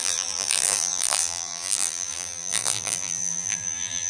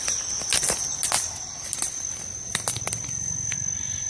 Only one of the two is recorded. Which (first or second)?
second